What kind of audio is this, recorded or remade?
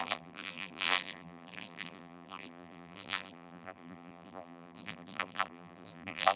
remade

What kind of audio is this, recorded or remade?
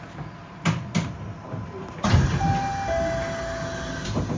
recorded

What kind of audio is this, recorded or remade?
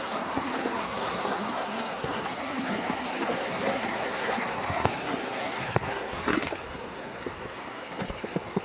remade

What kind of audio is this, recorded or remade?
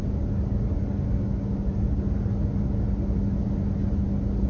recorded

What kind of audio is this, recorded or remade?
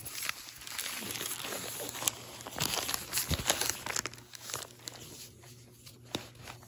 recorded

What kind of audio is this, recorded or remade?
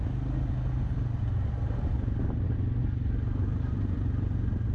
recorded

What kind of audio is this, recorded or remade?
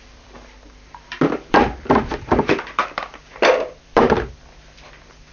remade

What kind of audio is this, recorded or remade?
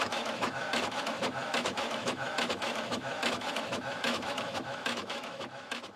remade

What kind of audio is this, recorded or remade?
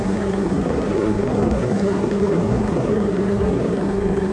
remade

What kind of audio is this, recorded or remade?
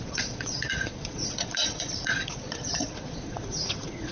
remade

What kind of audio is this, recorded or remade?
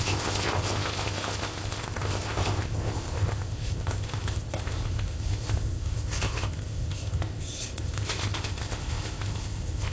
remade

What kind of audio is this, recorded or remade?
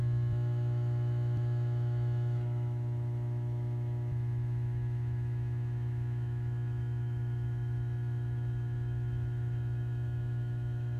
remade